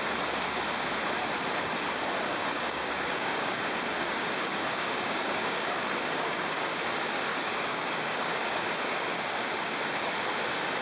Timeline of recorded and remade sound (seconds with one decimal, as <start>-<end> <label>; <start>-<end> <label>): 0.0-2.3 recorded; 2.3-6.8 remade; 6.8-7.3 recorded; 7.3-9.9 remade; 9.9-10.8 recorded